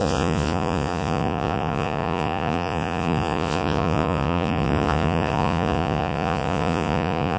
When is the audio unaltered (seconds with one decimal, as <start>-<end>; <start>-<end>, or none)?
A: none